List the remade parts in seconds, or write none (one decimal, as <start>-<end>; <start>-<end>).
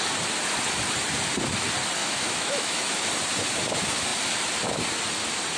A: 2.0-3.1